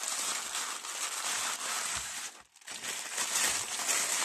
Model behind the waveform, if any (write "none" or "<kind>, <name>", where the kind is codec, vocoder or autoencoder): none